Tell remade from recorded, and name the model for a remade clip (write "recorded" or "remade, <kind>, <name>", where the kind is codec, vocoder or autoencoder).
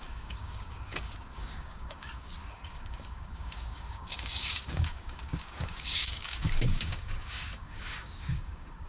remade, codec, DAC